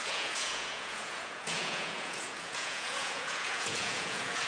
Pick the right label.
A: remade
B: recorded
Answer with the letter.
A